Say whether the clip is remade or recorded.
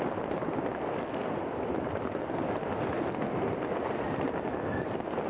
recorded